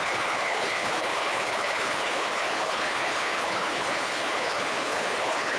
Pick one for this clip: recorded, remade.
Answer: remade